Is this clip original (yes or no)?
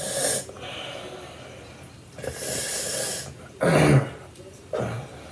yes